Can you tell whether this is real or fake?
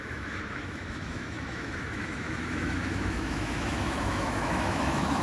fake